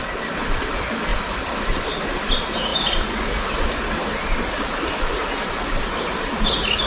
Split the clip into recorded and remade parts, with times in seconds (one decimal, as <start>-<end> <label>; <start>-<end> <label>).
0.0-6.9 recorded